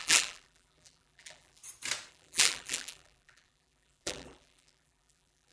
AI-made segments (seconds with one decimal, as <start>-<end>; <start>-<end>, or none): 0.0-1.6; 2.1-5.5